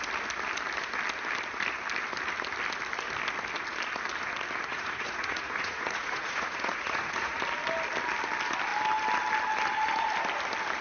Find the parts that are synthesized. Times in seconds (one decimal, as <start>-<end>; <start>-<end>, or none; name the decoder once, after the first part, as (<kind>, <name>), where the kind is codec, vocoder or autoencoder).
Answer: 4.7-7.4 (vocoder, Vocos)